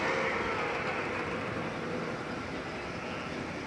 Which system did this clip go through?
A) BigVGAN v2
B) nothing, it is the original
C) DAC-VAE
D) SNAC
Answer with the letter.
B